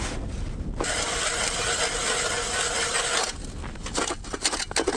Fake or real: real